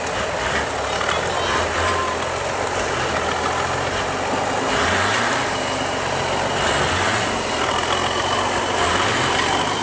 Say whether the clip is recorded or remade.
recorded